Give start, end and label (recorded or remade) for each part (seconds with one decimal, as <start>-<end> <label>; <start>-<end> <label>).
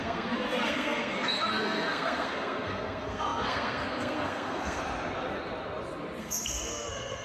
0.0-4.8 remade; 4.8-6.2 recorded; 6.2-7.2 remade